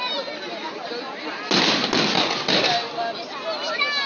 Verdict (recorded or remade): recorded